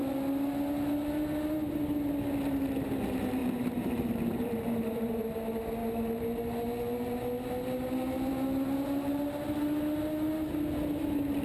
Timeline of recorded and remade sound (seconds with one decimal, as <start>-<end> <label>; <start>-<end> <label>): 0.0-3.4 recorded; 3.4-5.2 remade; 5.2-11.4 recorded